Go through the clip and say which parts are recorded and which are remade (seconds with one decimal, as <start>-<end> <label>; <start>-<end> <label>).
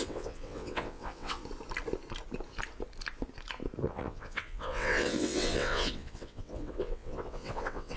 0.0-1.4 remade; 1.4-3.9 recorded; 3.9-8.0 remade